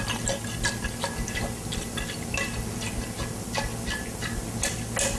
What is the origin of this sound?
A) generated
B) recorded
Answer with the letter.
B